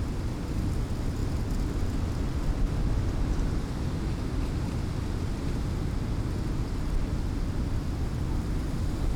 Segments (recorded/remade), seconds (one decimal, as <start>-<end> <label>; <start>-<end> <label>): 0.0-9.2 recorded